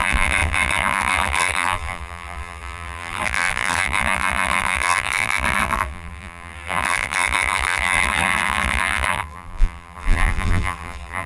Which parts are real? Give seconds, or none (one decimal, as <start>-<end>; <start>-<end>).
none